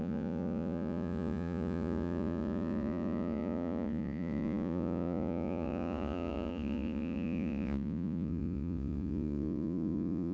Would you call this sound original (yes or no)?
no